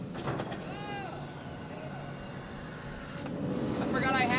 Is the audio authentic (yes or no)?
yes